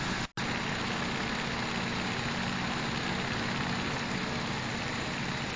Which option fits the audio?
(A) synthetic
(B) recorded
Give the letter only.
B